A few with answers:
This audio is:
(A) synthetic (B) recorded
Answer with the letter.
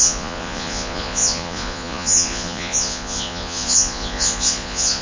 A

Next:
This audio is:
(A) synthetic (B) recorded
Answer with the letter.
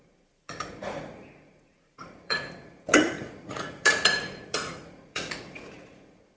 A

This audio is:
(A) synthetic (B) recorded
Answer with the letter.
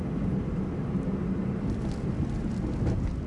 B